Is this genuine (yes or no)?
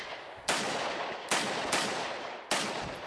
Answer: yes